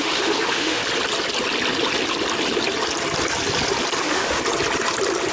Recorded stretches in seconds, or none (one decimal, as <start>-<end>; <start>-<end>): 0.8-4.0; 4.4-5.3